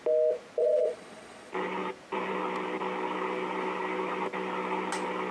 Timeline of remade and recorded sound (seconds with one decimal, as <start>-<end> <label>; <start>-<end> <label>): 0.0-0.6 recorded; 0.6-1.5 remade; 1.5-5.3 recorded